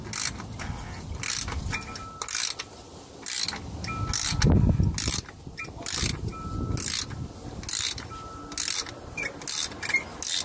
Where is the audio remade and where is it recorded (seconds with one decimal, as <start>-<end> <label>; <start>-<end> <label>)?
0.0-10.4 recorded